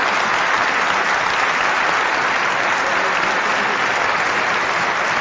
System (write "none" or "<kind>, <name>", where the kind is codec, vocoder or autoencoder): none